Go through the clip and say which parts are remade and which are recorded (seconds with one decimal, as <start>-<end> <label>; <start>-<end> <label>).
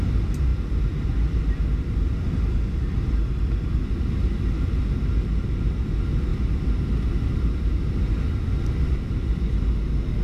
0.0-0.5 recorded; 0.5-5.1 remade; 5.1-6.3 recorded; 6.3-9.6 remade; 9.6-10.2 recorded